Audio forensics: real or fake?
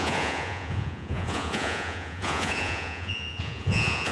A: fake